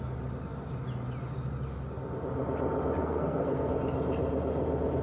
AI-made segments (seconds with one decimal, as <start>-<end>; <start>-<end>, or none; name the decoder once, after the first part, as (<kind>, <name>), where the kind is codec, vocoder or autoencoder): 3.0-3.7 (codec, SNAC)